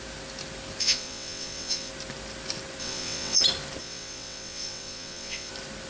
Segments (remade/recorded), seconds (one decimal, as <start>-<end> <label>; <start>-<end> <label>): 0.0-0.8 recorded; 0.8-1.9 remade; 1.9-2.8 recorded; 2.8-3.4 remade; 3.4-3.8 recorded; 3.8-5.5 remade; 5.5-5.9 recorded